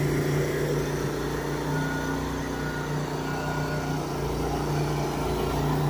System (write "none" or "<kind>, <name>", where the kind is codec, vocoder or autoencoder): none